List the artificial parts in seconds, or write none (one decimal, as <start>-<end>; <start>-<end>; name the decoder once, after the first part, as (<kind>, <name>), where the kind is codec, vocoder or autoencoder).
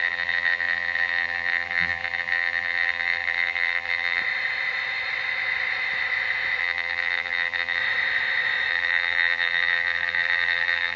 0.0-4.2 (vocoder, BigVGAN v2); 6.6-7.8; 8.7-11.0